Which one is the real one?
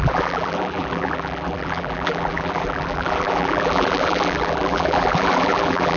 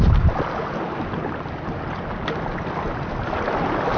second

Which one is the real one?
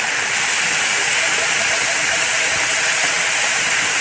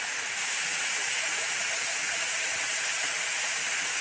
first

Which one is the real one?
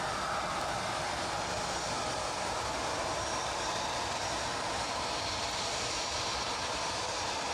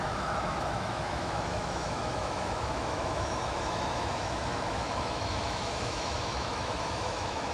first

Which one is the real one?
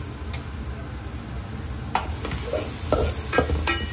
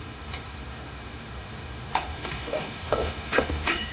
first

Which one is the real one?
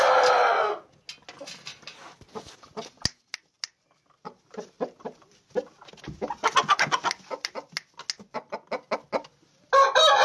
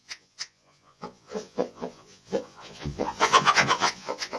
first